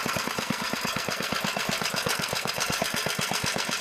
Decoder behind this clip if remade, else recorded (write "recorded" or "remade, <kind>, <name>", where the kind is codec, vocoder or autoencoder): remade, codec, SNAC